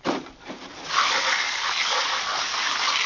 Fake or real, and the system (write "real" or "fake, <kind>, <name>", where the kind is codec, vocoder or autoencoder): fake, vocoder, BigVGAN v2